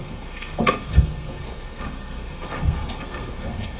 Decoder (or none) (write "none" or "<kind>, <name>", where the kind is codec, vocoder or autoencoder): codec, SNAC